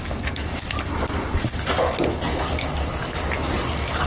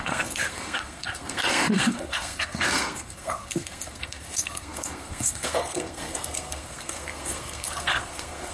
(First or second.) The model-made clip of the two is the second